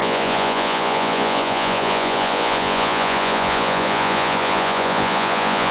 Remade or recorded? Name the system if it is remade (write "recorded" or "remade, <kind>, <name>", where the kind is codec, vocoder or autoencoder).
remade, vocoder, Vocos